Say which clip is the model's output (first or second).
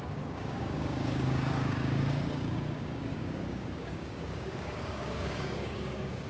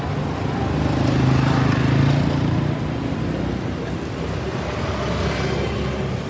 first